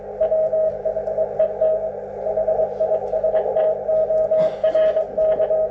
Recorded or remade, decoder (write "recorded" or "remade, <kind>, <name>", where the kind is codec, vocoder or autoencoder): recorded